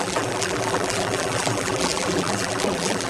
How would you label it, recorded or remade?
remade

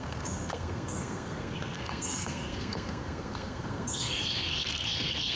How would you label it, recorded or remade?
remade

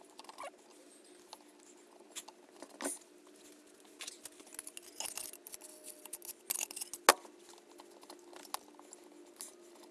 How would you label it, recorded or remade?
recorded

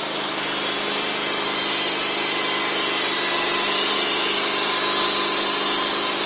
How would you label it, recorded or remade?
recorded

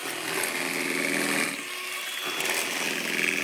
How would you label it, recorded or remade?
recorded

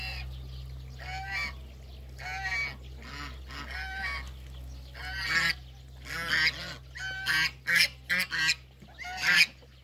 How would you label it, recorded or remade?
recorded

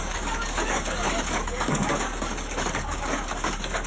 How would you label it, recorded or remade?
remade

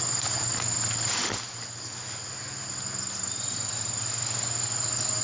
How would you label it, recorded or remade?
recorded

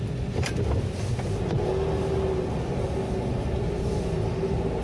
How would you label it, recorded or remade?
recorded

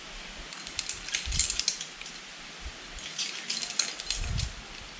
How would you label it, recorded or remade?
recorded